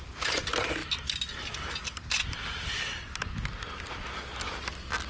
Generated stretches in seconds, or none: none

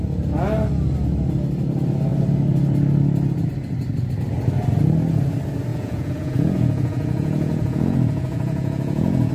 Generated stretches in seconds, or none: 5.7-9.3 (vocoder, Vocos)

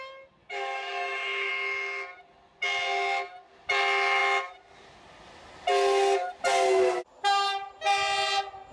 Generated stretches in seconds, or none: 0.4-1.5 (autoencoder, DAC-VAE)

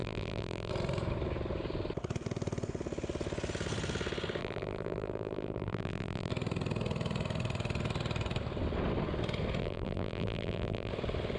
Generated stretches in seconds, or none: 0.0-0.7 (vocoder, BigVGAN v2); 4.4-6.3; 9.6-10.9

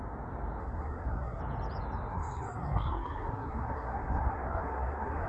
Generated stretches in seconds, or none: 0.6-1.4 (codec, SNAC); 2.1-5.3